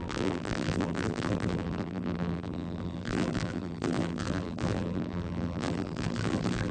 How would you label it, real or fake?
fake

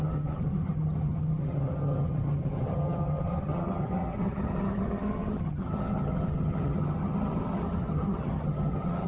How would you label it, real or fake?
fake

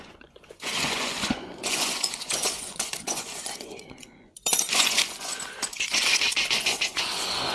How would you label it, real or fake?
fake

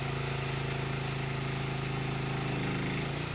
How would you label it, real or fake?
real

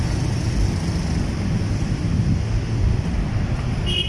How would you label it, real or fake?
real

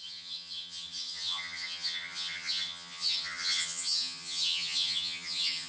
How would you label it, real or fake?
fake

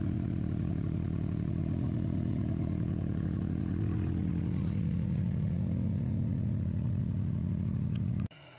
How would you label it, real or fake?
fake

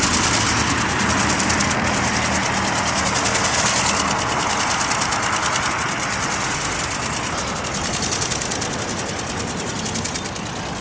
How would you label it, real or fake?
real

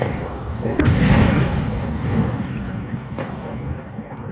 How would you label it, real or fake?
fake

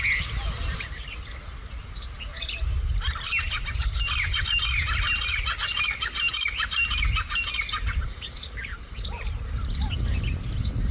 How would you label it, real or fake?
real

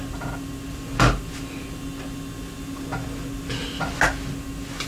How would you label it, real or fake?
real